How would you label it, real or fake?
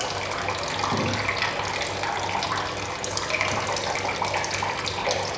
real